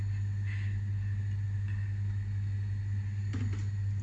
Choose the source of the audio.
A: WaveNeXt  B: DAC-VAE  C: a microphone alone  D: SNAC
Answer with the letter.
C